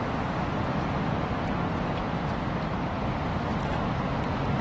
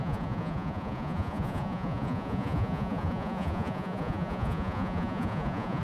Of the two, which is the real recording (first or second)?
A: first